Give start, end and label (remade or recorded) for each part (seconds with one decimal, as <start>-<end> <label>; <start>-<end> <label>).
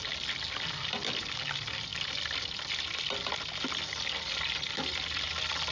0.0-5.7 recorded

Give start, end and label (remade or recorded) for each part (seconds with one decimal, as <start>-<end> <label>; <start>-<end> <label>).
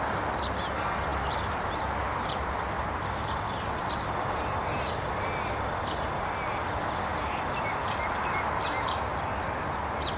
0.0-10.2 recorded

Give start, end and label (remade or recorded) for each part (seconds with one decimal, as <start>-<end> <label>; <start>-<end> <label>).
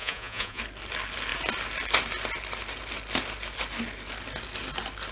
0.0-0.6 remade; 0.6-5.1 recorded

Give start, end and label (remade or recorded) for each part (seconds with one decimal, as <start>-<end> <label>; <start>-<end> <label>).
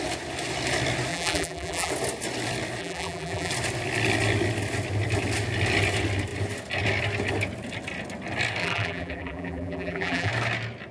0.0-1.1 recorded; 1.1-1.9 remade; 1.9-2.8 recorded; 2.8-3.5 remade; 3.5-8.6 recorded; 8.6-10.3 remade; 10.3-10.9 recorded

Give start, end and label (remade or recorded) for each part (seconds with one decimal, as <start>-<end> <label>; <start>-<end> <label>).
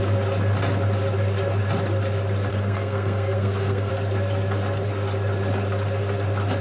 0.0-2.5 recorded; 2.5-3.9 remade; 3.9-6.6 recorded